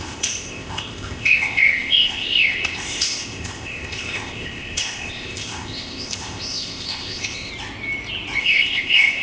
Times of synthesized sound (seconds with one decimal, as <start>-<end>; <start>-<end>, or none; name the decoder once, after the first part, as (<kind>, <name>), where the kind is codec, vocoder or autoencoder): 0.0-7.5 (codec, ZipCodec); 8.4-9.2